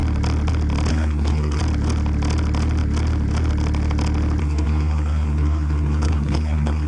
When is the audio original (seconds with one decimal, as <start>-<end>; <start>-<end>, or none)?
0.0-0.9; 1.6-4.4